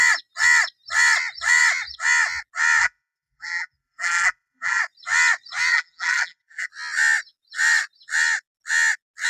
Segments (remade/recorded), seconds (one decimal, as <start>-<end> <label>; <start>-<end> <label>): 0.0-2.8 recorded; 2.8-4.8 remade; 4.8-5.7 recorded; 5.7-6.7 remade; 6.7-9.3 recorded